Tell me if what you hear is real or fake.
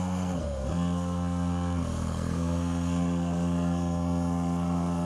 fake